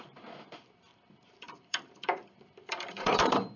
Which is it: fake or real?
fake